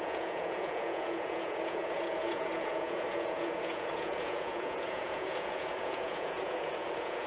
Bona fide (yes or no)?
no